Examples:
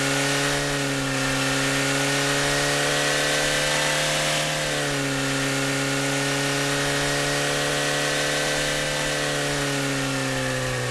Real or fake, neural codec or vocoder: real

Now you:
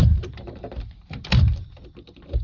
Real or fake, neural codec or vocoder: fake, vocoder, BigVGAN v2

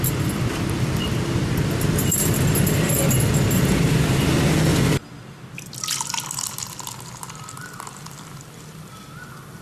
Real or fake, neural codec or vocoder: real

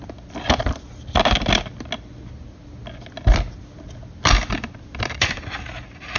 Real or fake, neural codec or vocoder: real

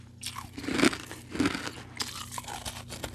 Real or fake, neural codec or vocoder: real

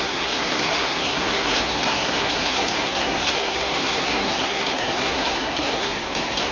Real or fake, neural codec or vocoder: fake, codec, SNAC